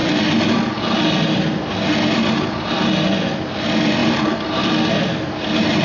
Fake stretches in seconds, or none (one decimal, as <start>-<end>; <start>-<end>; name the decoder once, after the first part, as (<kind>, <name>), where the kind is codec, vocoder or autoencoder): none